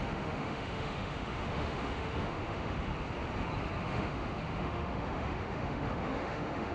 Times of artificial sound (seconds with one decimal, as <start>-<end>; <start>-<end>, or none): 0.0-2.9; 3.8-6.7